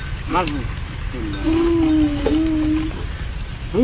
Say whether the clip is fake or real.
real